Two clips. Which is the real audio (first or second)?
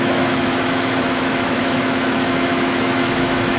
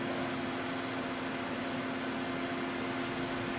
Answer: second